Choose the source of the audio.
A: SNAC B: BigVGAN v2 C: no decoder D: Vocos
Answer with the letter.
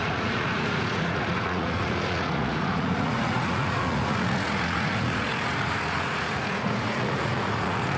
D